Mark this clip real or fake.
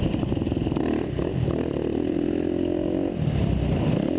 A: real